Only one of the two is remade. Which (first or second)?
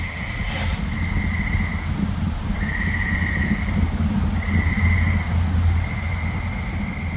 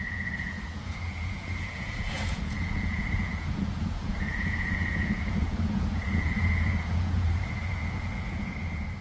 second